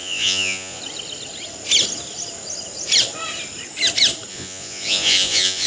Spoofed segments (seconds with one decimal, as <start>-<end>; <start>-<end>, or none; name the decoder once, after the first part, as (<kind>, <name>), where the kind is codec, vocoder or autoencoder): 0.0-0.8 (vocoder, Vocos); 4.3-5.7